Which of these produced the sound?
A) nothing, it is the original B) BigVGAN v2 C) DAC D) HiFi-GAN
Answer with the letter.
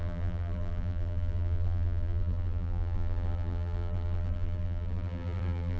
B